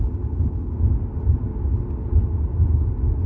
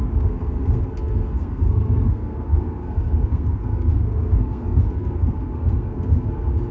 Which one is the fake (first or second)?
second